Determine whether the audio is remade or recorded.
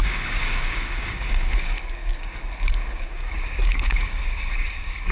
remade